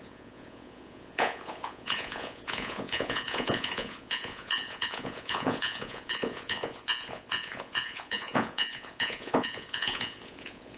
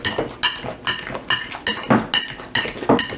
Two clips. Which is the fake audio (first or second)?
first